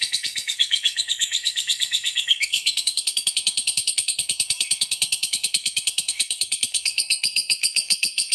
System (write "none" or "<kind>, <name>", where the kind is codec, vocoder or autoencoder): codec, SNAC